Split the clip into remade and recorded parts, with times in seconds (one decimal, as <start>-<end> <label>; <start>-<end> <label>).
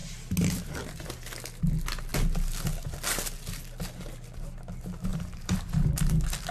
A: 0.0-5.1 recorded; 5.1-5.7 remade; 5.7-6.5 recorded